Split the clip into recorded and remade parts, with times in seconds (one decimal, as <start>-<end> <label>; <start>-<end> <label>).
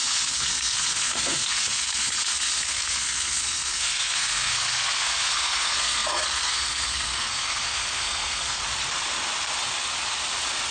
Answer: 0.0-8.6 remade; 8.6-10.7 recorded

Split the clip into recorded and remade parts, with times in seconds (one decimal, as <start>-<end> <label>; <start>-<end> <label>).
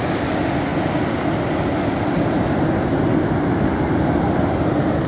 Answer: 0.0-5.1 recorded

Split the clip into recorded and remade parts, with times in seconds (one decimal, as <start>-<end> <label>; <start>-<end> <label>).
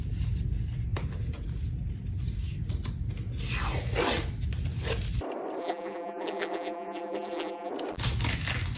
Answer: 0.0-5.6 recorded; 5.6-7.7 remade; 7.7-8.8 recorded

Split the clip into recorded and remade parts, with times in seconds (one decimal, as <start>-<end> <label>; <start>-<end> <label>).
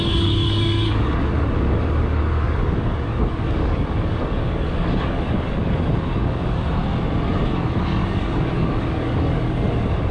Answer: 0.0-6.8 remade; 6.8-7.5 recorded; 7.5-10.1 remade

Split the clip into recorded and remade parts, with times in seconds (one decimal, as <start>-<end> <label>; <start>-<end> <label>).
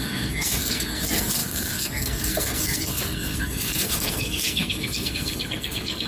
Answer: 0.0-6.1 remade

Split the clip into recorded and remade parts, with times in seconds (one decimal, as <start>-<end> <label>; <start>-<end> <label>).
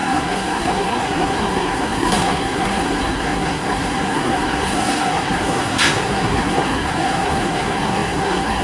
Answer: 0.0-8.6 remade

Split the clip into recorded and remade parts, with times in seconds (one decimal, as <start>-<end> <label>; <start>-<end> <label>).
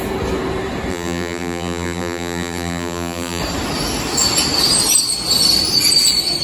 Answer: 0.0-0.9 recorded; 0.9-3.4 remade; 3.4-6.4 recorded